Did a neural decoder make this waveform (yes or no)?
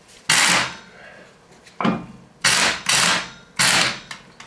no